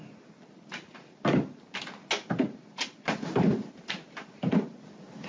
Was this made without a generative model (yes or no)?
yes